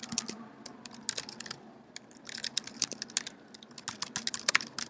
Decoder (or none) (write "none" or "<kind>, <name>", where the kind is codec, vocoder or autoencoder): none